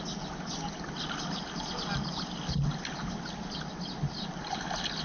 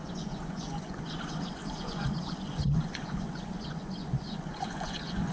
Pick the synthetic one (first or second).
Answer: second